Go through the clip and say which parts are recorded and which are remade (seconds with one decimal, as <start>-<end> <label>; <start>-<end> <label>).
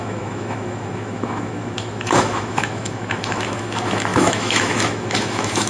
0.0-5.7 remade